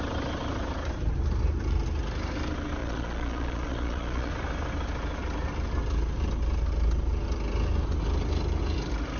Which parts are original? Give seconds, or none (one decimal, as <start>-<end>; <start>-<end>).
0.0-2.8; 4.3-9.2